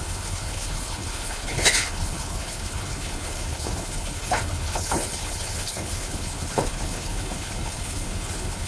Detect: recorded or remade remade